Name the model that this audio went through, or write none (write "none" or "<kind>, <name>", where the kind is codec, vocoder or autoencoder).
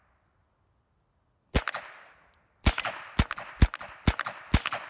none